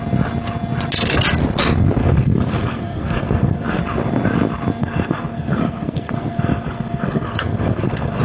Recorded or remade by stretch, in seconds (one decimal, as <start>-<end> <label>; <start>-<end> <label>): 0.0-2.0 recorded; 2.0-3.8 remade; 3.8-4.8 recorded; 4.8-8.2 remade